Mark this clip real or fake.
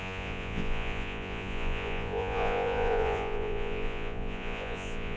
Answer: fake